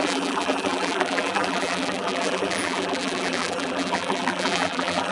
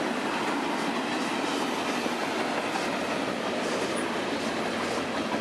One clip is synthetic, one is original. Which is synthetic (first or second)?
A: first